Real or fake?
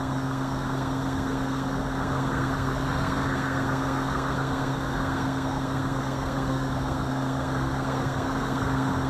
fake